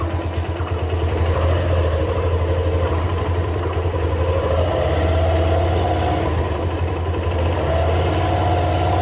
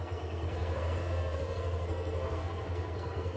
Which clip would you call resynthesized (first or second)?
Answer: second